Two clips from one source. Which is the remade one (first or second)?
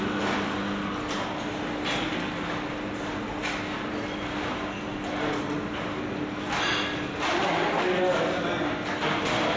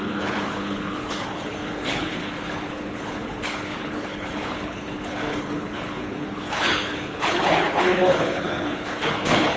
second